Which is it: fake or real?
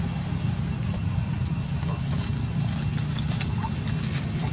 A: real